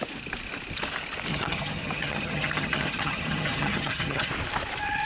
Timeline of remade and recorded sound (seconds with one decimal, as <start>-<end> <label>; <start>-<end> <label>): 0.0-1.3 recorded; 1.3-4.3 remade; 4.3-5.1 recorded